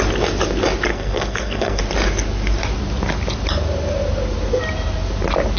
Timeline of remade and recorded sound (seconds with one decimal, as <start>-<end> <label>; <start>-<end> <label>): 0.0-0.9 recorded; 0.9-1.8 remade; 1.8-5.6 recorded